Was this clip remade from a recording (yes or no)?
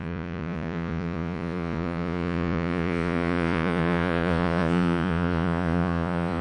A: yes